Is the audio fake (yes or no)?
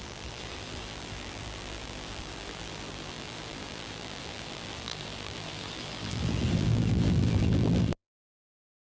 yes